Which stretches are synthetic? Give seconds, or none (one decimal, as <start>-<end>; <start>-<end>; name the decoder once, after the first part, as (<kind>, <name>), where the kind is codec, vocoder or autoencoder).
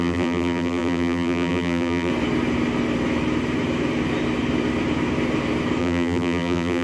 0.0-2.1 (vocoder, BigVGAN v2); 5.8-6.8